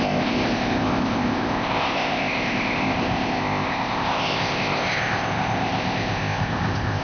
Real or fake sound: fake